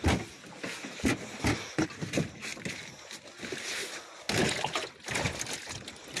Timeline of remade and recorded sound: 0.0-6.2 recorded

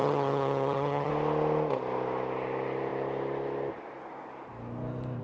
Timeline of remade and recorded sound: 0.0-1.1 remade; 1.1-5.2 recorded

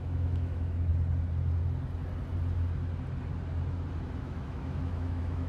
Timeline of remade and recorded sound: 0.0-0.9 remade; 0.9-4.2 recorded; 4.2-5.5 remade

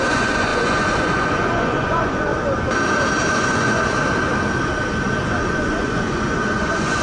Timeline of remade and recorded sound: 0.0-2.3 remade; 2.3-3.3 recorded; 3.3-3.9 remade; 3.9-5.4 recorded; 5.4-7.0 remade

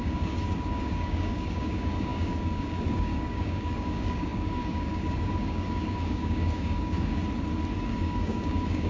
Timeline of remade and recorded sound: 0.0-7.2 remade; 7.2-7.8 recorded; 7.8-8.9 remade

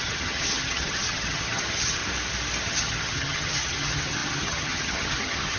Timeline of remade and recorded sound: 0.0-2.0 remade; 2.0-2.6 recorded; 2.6-5.6 remade

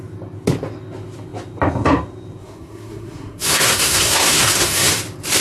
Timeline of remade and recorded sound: 0.0-2.4 recorded; 2.4-4.9 remade; 4.9-5.4 recorded